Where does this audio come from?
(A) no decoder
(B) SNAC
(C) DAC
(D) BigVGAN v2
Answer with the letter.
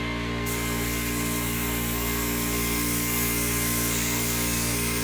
B